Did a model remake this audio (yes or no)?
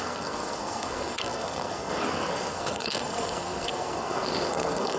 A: yes